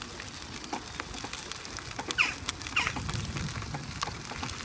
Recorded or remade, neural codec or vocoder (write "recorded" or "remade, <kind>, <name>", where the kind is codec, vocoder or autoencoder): recorded